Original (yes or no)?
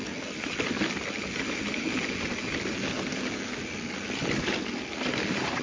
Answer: yes